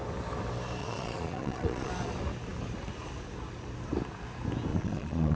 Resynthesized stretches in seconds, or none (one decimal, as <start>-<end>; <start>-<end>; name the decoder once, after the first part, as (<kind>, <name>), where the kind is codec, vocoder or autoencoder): 0.8-1.9 (vocoder, Vocos); 4.7-5.4